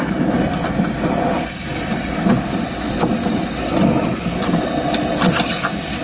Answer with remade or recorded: recorded